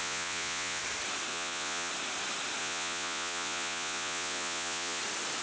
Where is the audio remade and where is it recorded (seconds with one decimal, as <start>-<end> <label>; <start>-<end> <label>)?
0.0-0.8 remade; 0.8-1.3 recorded; 1.3-1.9 remade; 1.9-2.6 recorded; 2.6-5.0 remade; 5.0-5.4 recorded